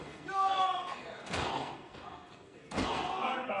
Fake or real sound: fake